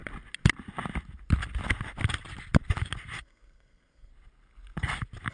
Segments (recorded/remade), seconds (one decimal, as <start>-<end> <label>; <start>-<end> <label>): 0.0-3.2 recorded; 3.2-4.1 remade; 4.1-5.3 recorded